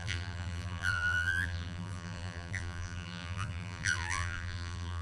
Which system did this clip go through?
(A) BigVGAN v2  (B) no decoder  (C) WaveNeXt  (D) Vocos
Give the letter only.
A